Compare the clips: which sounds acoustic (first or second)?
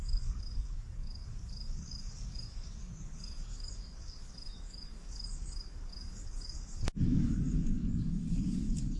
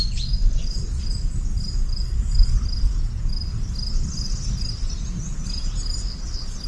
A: second